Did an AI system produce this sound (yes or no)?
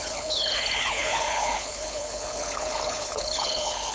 yes